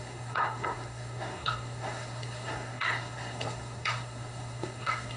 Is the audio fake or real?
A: fake